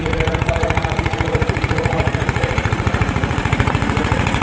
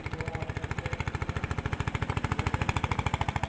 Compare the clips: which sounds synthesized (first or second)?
first